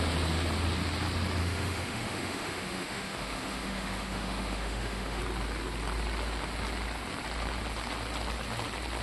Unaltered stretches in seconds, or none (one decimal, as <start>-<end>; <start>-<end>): 0.0-1.4; 5.2-9.0